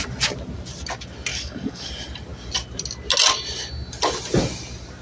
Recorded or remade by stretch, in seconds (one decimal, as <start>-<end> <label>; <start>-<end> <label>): 0.0-1.3 recorded; 1.3-1.9 remade; 1.9-5.0 recorded